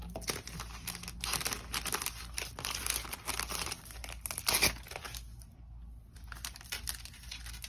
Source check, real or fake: real